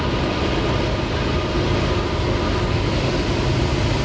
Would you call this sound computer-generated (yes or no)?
no